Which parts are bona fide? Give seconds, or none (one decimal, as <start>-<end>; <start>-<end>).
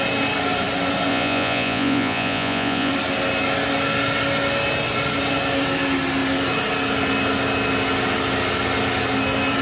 0.0-1.1; 2.9-9.6